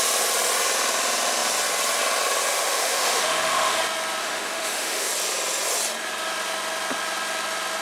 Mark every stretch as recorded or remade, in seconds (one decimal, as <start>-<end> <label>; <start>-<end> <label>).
0.0-2.5 recorded; 2.5-3.8 remade; 3.8-4.2 recorded; 4.2-5.1 remade; 5.1-7.8 recorded